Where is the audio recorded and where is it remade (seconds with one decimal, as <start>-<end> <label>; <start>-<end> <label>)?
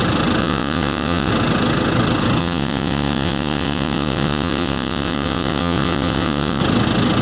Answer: 0.0-0.4 recorded; 0.4-1.3 remade; 1.3-2.4 recorded; 2.4-6.6 remade; 6.6-7.2 recorded